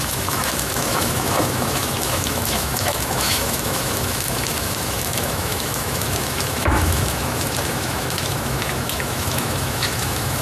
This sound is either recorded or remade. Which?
remade